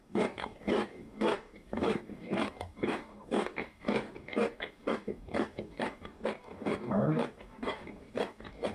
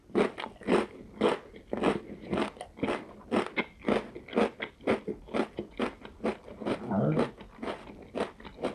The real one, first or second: second